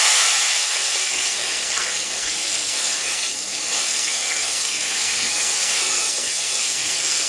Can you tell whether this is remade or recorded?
remade